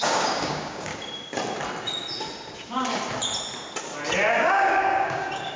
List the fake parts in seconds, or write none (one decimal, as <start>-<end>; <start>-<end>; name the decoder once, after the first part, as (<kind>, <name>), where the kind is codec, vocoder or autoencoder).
0.0-0.9 (codec, DAC); 4.3-5.6